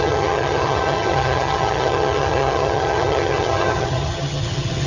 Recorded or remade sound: remade